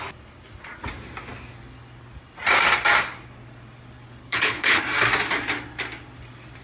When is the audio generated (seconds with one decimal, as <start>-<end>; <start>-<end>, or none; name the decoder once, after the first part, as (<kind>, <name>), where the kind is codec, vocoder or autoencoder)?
4.2-4.8 (codec, HILCodec)